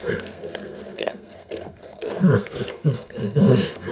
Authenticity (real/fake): fake